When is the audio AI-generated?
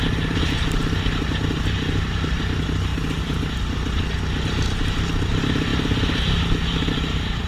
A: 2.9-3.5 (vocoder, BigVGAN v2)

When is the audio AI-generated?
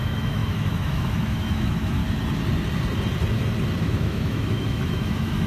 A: 0.0-2.0 (autoencoder, DAC-VAE); 3.8-5.5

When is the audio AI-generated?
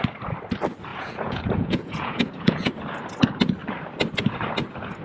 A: 0.9-2.7 (vocoder, Vocos)